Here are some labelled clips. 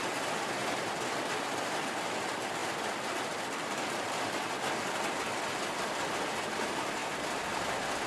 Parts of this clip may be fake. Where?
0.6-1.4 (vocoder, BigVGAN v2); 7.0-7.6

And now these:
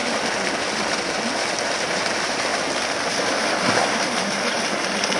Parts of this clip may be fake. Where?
1.3-2.5 (vocoder, BigVGAN v2); 4.5-5.2

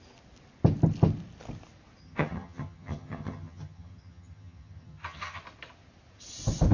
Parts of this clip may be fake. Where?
2.0-5.4 (vocoder, HiFi-GAN)

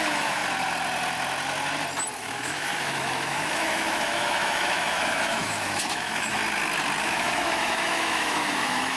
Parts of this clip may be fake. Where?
0.0-0.4 (autoencoder, DAC-VAE); 2.2-6.4; 7.0-9.0

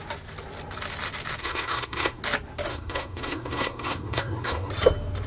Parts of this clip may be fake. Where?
1.4-2.2 (codec, SNAC); 2.7-4.7

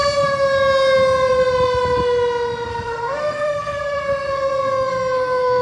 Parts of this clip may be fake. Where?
2.7-5.6 (codec, SNAC)